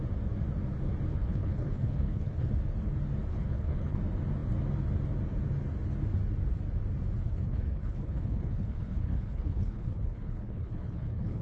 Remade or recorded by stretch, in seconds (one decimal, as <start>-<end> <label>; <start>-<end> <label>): 0.0-1.1 recorded; 1.1-2.5 remade; 2.5-3.3 recorded; 3.3-4.0 remade; 4.0-7.2 recorded; 7.2-11.4 remade